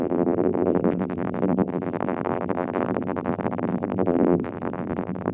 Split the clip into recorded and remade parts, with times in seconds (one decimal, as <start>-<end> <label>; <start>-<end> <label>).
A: 0.0-5.3 remade

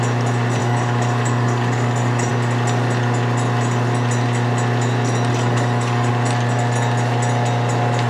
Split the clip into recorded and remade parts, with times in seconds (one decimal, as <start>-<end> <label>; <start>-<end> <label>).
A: 0.0-0.6 recorded; 0.6-2.3 remade; 2.3-5.3 recorded; 5.3-6.1 remade; 6.1-8.1 recorded

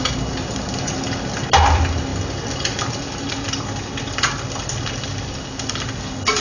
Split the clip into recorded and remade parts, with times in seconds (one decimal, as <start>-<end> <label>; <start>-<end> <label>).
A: 0.0-6.4 recorded